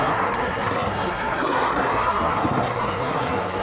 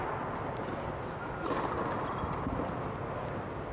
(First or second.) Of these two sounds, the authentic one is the second